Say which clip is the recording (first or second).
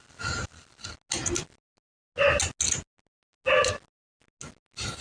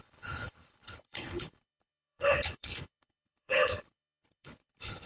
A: first